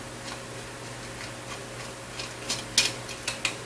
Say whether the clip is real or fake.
real